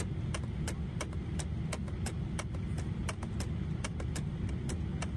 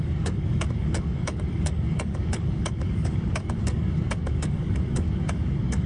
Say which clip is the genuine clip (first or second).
first